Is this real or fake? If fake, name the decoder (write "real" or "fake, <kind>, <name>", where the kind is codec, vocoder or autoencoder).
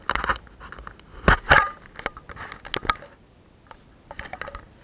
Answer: real